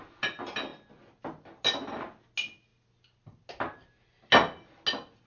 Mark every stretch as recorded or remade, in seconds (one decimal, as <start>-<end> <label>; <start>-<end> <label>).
0.0-5.3 recorded